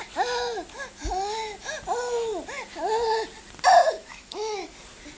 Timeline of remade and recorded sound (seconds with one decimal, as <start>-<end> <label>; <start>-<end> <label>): 0.0-3.8 recorded; 3.8-4.7 remade; 4.7-5.2 recorded